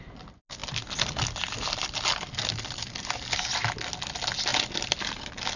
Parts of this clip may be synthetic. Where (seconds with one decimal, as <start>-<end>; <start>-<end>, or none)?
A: none